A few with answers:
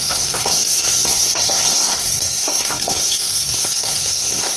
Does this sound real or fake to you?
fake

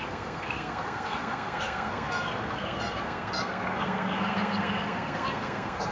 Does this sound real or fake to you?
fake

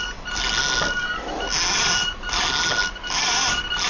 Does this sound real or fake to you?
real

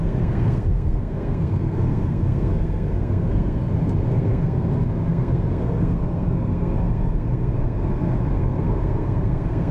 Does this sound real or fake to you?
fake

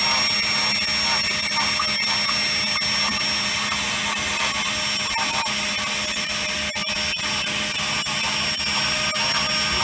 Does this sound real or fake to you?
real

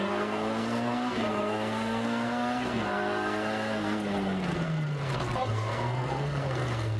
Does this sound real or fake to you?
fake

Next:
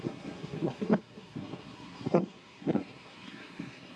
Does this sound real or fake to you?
fake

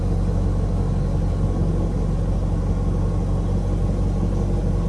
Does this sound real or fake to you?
real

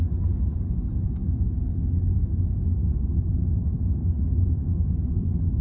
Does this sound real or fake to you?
real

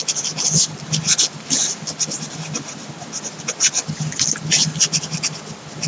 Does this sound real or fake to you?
real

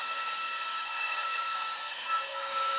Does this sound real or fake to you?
fake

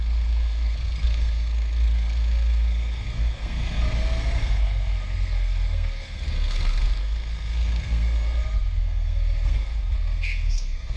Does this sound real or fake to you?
fake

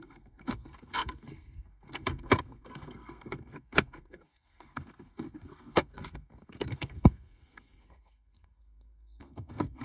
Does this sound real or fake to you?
fake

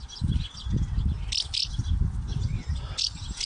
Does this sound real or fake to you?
real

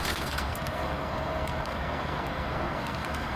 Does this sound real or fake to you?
fake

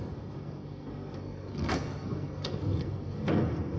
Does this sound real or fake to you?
fake